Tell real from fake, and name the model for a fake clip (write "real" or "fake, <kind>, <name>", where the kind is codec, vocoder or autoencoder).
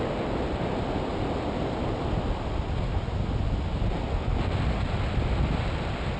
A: real